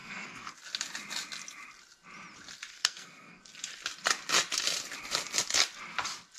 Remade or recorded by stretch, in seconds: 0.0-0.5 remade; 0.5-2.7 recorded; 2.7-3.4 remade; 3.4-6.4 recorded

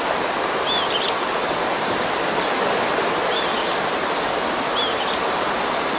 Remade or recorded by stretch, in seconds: 0.0-6.0 recorded

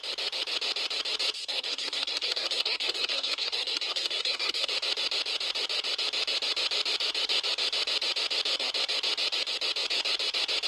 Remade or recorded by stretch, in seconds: 0.0-1.5 recorded; 1.5-4.7 remade; 4.7-10.7 recorded

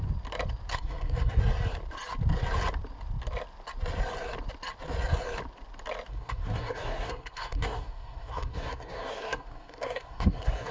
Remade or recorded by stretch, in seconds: 0.0-0.7 recorded; 0.7-1.4 remade; 1.4-6.1 recorded; 6.1-10.7 remade

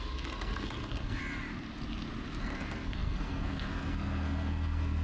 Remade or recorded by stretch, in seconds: 0.0-1.2 remade; 1.2-2.4 recorded; 2.4-5.0 remade

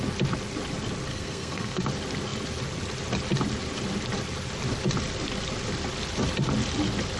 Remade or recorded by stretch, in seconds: 0.0-1.1 recorded; 1.1-1.8 remade; 1.8-7.2 recorded